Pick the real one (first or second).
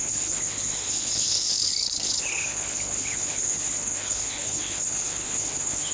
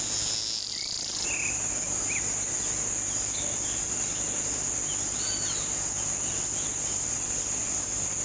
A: second